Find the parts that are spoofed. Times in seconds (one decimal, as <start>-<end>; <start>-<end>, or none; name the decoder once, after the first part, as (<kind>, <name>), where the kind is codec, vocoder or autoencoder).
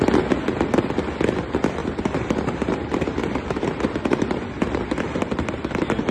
1.8-5.5 (vocoder, BigVGAN v2)